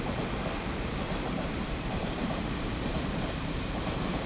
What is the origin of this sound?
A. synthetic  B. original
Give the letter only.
A